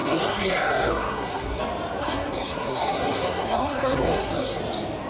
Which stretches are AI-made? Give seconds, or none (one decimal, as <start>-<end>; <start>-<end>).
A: 0.0-1.6; 2.0-4.6